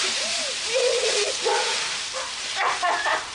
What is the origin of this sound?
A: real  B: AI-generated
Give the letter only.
B